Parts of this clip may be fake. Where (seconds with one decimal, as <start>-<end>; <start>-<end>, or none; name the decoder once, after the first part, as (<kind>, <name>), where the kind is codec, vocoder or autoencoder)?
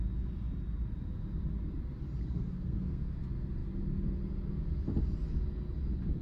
2.2-3.2 (codec, SNAC)